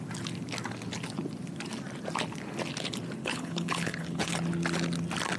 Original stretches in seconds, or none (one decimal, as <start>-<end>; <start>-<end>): 0.0-3.2; 4.4-5.4